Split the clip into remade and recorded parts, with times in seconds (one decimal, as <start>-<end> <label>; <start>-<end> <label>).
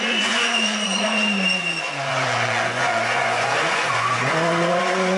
0.0-5.2 remade